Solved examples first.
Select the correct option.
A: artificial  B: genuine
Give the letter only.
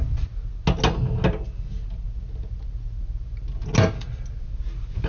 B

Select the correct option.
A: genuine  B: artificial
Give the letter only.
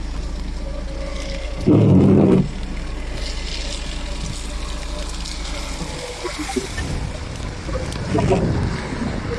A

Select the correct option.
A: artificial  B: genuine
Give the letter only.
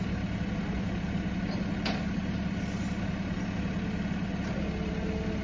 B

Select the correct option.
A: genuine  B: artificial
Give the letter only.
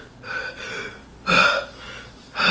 A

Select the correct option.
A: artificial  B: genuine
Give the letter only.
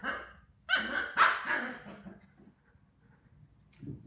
B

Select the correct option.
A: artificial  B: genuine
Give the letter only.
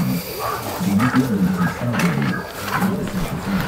B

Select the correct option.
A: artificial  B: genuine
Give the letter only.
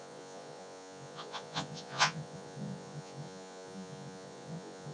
A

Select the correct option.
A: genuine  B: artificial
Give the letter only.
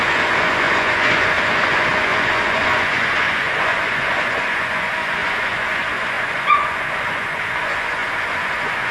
B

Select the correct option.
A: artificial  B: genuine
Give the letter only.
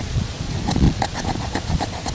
A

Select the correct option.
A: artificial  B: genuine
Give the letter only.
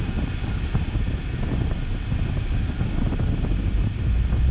B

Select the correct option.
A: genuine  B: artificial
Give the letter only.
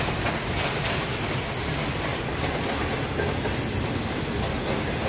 A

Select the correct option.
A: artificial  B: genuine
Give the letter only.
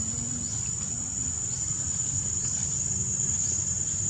B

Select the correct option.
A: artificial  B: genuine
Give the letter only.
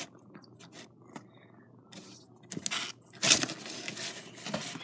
B